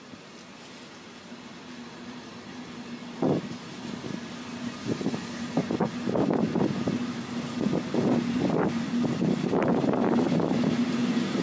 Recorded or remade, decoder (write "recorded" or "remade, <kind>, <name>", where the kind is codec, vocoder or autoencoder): recorded